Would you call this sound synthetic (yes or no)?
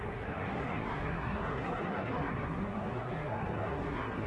yes